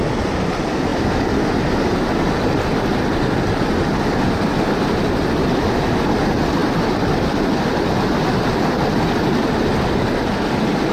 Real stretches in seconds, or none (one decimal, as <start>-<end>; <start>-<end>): 0.0-10.9